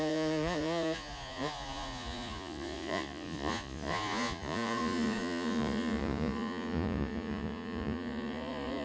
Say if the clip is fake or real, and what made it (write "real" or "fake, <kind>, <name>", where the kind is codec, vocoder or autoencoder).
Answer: fake, vocoder, Vocos